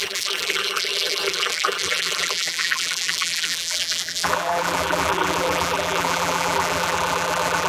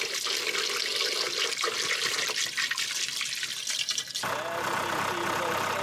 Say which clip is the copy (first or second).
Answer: first